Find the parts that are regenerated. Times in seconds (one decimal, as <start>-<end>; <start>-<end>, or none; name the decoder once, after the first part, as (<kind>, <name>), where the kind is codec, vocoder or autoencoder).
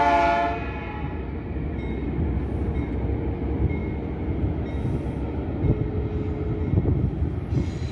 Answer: none